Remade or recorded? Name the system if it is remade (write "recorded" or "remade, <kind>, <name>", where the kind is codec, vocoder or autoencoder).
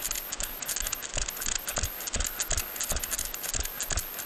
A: recorded